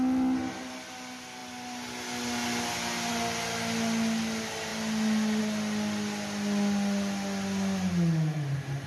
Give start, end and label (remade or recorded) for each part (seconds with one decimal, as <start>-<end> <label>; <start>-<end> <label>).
0.0-8.9 recorded